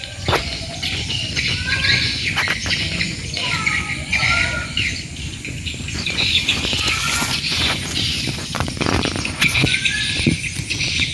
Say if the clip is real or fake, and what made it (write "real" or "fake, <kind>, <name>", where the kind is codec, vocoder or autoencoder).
fake, vocoder, Vocos